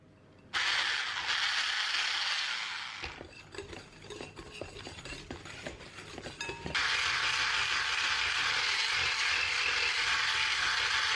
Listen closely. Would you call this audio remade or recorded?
recorded